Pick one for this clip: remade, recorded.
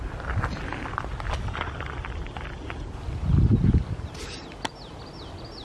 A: recorded